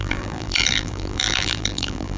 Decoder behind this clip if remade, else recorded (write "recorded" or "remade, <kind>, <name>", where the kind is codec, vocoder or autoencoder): remade, vocoder, BigVGAN v2